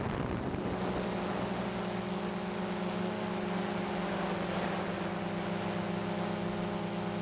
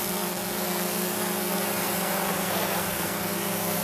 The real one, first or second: first